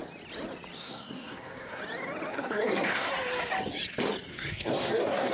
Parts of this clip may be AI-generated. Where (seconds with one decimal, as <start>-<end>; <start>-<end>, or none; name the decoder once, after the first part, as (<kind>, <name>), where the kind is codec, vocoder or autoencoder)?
0.8-1.8 (codec, SNAC); 2.3-3.1; 4.3-5.3